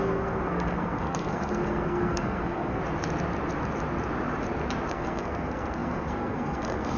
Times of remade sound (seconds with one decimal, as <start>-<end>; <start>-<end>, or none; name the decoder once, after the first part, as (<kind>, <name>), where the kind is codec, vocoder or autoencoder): 0.0-2.8 (codec, SNAC); 4.9-7.0